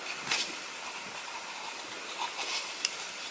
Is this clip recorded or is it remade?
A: recorded